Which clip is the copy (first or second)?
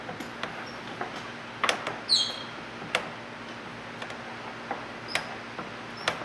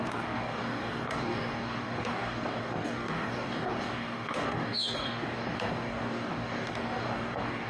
second